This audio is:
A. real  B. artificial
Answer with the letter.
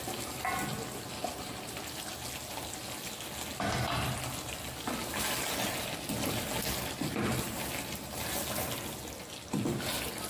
A